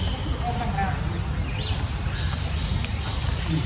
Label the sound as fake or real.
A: real